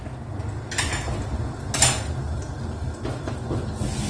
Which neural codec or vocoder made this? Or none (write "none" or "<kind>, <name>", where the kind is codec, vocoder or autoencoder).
none